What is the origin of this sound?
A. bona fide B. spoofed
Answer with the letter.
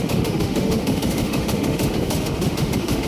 B